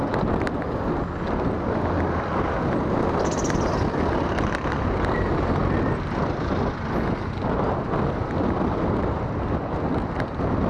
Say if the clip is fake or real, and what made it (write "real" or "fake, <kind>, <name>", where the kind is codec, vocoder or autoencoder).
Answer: real